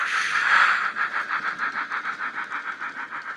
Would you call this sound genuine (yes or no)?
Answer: yes